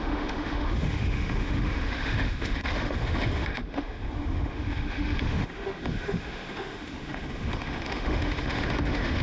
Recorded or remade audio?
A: remade